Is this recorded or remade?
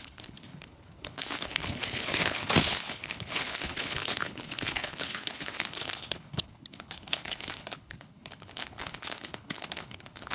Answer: remade